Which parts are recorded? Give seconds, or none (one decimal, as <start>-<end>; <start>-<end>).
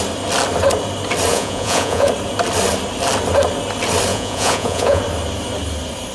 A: 0.0-1.3; 2.1-4.1; 5.0-6.1